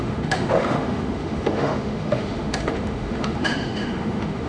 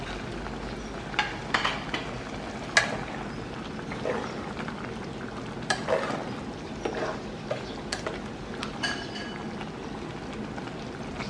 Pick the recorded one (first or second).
second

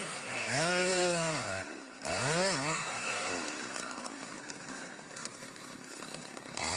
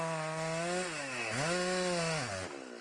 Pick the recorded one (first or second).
second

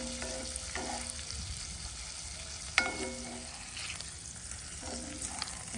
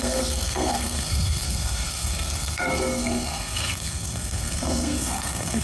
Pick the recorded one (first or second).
first